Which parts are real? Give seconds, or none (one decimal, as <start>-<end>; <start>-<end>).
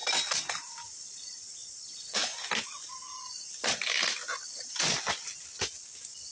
0.0-0.8; 2.3-6.3